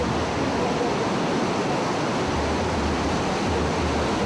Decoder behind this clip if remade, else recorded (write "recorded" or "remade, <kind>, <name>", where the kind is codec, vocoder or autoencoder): remade, vocoder, BigVGAN v2